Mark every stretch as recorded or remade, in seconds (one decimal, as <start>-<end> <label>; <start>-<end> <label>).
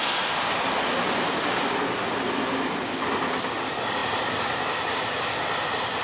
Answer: 0.0-6.0 recorded